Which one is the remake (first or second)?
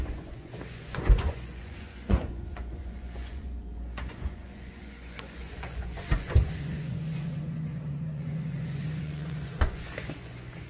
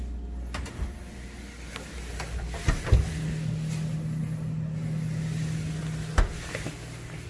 first